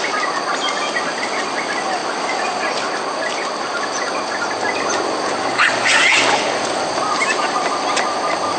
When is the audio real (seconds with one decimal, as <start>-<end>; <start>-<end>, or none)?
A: 0.0-8.6